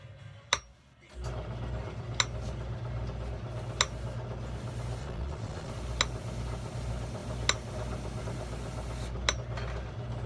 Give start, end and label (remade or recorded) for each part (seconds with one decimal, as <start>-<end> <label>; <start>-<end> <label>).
0.0-5.0 recorded; 5.0-5.7 remade; 5.7-10.3 recorded